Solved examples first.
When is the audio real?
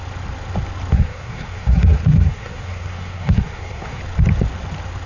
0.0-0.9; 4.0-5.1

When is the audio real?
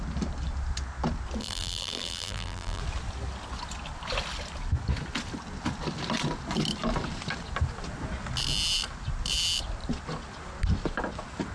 0.0-1.4; 2.8-11.5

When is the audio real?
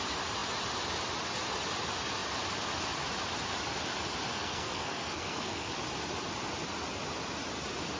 0.0-4.3; 5.7-8.0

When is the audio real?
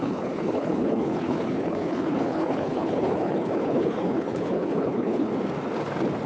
5.3-6.3